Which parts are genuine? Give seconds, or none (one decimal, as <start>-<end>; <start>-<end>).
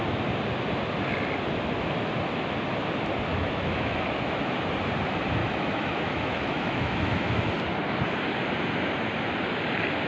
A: 0.0-3.3; 4.1-5.4; 7.5-10.1